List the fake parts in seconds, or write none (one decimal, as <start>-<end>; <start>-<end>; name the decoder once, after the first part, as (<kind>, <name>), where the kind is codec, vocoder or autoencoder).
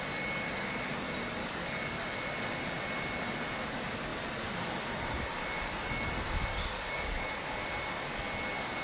1.4-2.0 (codec, DAC); 6.5-7.3